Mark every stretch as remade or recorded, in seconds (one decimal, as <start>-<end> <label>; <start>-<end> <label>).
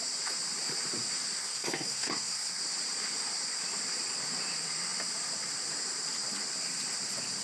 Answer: 0.0-1.4 recorded; 1.4-2.6 remade; 2.6-7.4 recorded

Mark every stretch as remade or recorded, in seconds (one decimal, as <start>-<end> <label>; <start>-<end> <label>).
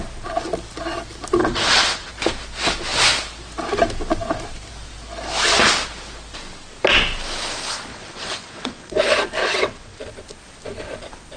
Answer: 0.0-1.4 recorded; 1.4-2.1 remade; 2.1-7.9 recorded; 7.9-9.0 remade; 9.0-9.4 recorded; 9.4-10.0 remade; 10.0-11.4 recorded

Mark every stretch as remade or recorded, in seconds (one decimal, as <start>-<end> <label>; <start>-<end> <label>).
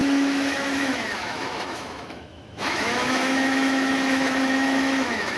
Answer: 0.0-5.4 remade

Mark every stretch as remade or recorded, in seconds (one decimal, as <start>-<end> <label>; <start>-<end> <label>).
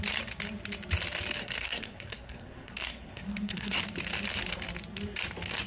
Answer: 0.0-1.4 recorded; 1.4-3.8 remade; 3.8-5.7 recorded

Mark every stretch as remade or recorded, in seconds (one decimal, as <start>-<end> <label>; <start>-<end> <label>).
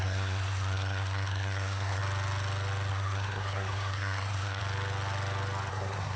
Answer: 0.0-2.0 remade; 2.0-2.9 recorded; 2.9-4.6 remade; 4.6-5.7 recorded; 5.7-6.2 remade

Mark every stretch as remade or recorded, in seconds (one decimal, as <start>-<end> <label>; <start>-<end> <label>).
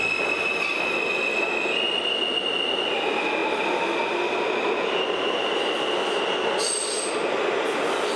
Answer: 0.0-8.2 recorded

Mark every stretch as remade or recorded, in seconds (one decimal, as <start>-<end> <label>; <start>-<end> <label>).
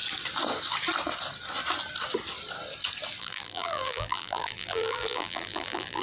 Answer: 0.0-3.2 recorded; 3.2-6.0 remade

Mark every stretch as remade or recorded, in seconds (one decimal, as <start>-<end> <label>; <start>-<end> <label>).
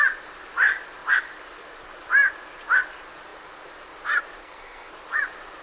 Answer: 0.0-4.4 recorded; 4.4-4.9 remade; 4.9-5.6 recorded